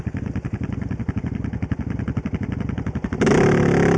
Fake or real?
real